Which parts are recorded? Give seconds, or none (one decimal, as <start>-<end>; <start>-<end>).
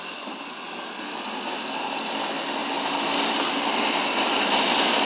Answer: 0.0-5.0